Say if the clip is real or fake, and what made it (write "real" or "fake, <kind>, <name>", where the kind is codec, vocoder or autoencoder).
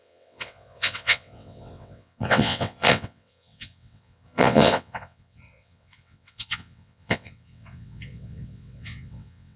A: fake, vocoder, WaveNeXt